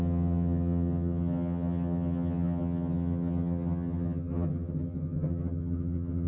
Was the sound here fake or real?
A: fake